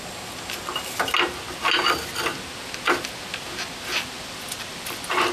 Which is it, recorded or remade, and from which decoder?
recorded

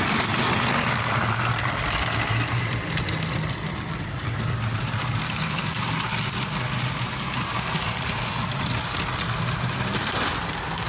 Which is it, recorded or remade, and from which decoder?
recorded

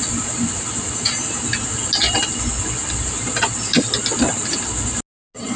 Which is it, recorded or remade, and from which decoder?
recorded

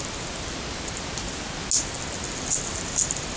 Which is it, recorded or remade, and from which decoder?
recorded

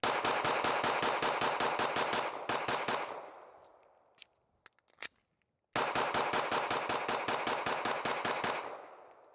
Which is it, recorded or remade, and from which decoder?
recorded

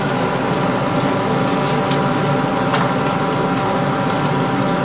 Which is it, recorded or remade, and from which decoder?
recorded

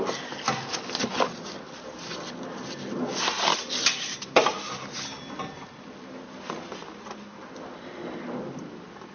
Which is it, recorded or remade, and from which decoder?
recorded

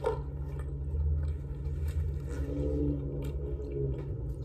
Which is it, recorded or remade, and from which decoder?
recorded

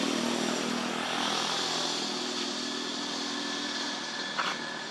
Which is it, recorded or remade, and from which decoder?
recorded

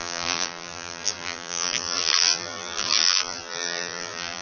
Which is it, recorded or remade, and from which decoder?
remade, vocoder, BigVGAN v2